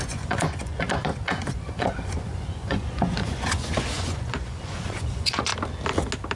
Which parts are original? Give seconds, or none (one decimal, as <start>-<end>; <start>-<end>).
5.5-6.4